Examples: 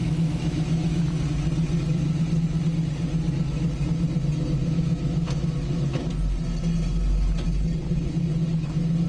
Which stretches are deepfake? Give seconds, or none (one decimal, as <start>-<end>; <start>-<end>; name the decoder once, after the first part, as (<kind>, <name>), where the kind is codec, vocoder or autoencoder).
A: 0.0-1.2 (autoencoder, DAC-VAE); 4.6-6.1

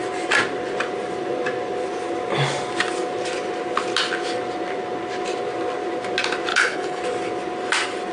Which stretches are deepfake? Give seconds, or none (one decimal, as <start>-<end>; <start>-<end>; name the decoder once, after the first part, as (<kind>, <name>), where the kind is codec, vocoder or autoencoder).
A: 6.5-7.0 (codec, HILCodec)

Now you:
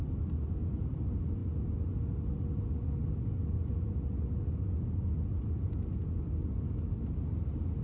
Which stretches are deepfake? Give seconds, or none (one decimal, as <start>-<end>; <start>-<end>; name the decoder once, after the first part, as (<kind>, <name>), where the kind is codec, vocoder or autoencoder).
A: none